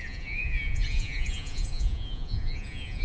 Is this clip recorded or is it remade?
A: remade